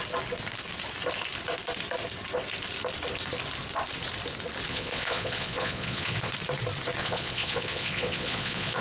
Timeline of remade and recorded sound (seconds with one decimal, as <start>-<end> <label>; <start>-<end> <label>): 0.0-4.7 recorded; 4.7-6.3 remade; 6.3-7.0 recorded; 7.0-8.8 remade